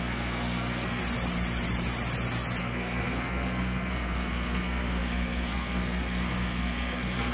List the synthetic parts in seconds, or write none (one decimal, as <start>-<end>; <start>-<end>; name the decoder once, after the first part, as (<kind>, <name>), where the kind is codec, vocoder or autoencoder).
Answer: 0.0-1.0 (codec, SNAC); 2.6-7.3